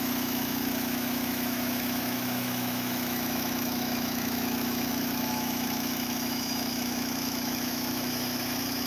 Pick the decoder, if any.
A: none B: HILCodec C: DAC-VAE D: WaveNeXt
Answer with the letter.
C